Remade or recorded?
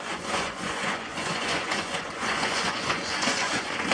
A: remade